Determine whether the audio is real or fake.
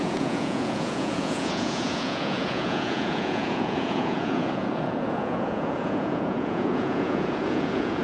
fake